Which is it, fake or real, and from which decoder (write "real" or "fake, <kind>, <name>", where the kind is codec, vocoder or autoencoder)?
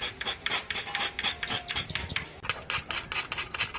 real